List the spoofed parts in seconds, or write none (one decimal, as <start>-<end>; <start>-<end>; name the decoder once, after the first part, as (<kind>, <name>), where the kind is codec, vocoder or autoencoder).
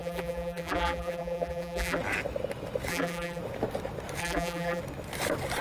0.0-2.0 (vocoder, BigVGAN v2); 2.9-3.4; 4.2-4.8